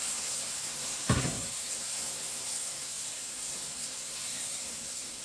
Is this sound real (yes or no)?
no